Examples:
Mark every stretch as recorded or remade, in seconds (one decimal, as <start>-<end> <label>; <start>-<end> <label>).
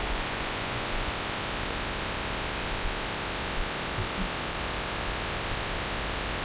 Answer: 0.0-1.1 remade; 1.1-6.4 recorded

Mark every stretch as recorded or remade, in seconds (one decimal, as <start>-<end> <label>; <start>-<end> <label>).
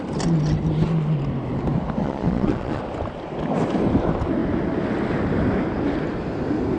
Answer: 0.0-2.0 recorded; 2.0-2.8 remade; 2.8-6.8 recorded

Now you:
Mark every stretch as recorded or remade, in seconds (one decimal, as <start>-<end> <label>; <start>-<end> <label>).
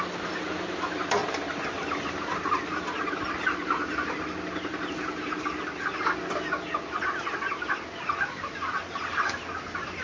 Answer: 0.0-10.0 recorded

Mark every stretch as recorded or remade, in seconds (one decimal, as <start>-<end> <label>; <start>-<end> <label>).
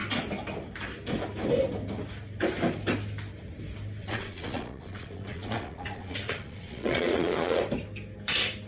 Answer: 0.0-4.0 recorded; 4.0-7.6 remade; 7.6-8.7 recorded